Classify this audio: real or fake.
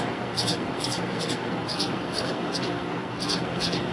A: fake